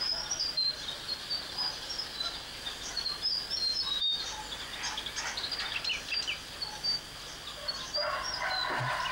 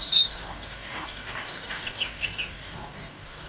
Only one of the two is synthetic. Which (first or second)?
second